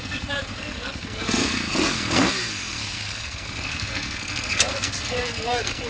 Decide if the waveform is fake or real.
fake